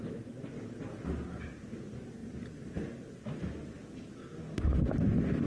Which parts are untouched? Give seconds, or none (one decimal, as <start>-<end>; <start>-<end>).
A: 0.0-2.2; 2.9-5.5

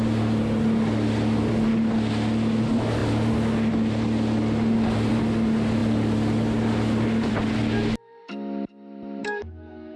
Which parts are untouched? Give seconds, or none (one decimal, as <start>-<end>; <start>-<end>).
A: 0.0-9.2

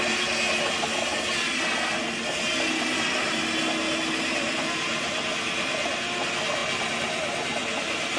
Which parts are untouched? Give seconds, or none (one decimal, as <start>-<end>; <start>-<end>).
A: 0.0-8.2

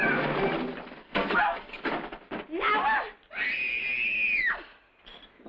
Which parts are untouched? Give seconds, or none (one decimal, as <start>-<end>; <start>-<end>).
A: 0.0-1.0; 1.8-5.5

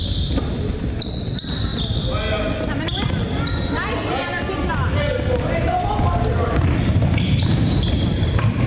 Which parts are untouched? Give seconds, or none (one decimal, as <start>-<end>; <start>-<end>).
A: 0.0-8.7

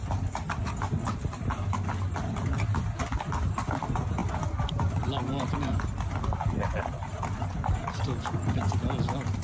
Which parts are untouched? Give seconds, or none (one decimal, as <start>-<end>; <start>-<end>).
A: 0.0-9.4

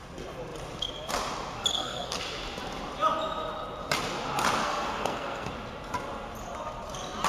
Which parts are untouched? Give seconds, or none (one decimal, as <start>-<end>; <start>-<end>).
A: 0.0-1.7; 2.2-4.6; 5.5-7.3